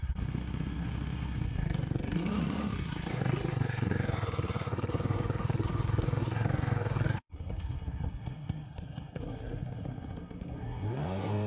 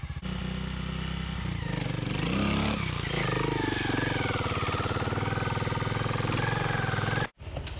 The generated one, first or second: first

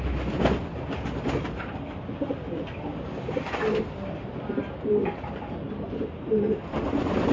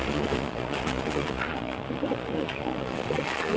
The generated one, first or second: second